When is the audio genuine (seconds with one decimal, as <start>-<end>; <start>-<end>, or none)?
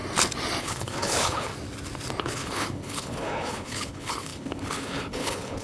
0.0-0.6; 1.5-2.2